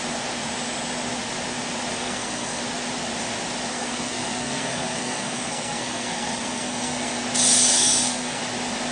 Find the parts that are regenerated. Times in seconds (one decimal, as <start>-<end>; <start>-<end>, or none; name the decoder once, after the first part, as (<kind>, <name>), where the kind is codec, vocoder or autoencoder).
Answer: 1.9-2.6 (codec, SNAC); 3.7-7.2; 7.7-8.4